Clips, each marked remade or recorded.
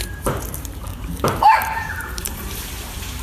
remade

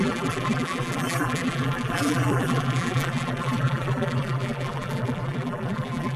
remade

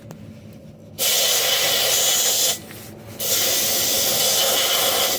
recorded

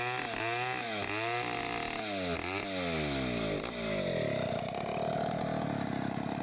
recorded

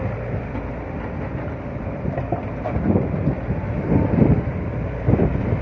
remade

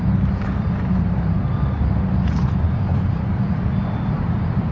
remade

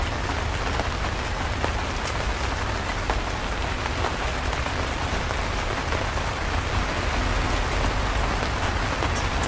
recorded